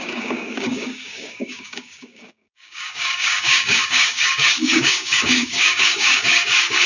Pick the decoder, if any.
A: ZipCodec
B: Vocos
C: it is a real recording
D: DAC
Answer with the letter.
D